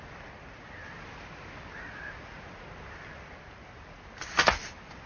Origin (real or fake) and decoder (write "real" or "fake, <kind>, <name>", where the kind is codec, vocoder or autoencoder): real